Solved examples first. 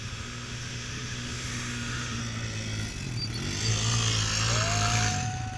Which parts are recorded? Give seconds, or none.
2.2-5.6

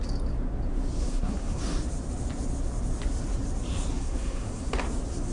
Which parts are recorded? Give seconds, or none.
0.0-1.0; 1.6-3.9; 4.7-5.3

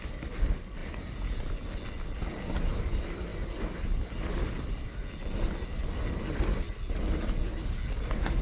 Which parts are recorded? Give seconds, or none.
0.0-8.4